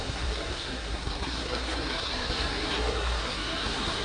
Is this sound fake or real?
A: fake